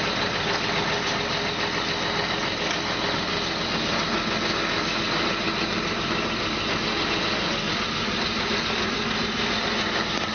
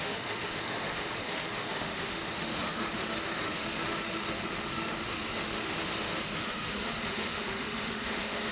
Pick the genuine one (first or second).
first